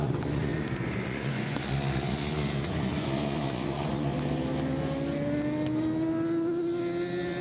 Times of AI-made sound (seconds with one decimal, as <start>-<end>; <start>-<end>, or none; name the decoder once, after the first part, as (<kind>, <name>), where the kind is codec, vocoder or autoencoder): 0.0-4.1 (vocoder, Vocos)